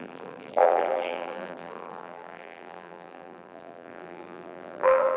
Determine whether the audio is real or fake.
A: fake